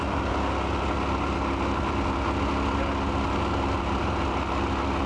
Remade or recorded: recorded